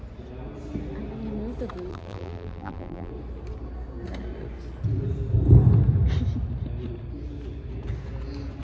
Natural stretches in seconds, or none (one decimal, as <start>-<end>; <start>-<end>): 0.0-1.9; 3.1-8.6